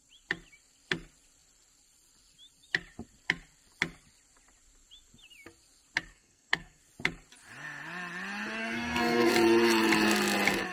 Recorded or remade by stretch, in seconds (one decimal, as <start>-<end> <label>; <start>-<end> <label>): 0.0-6.1 recorded; 6.1-6.8 remade; 6.8-8.6 recorded; 8.6-9.3 remade; 9.3-10.7 recorded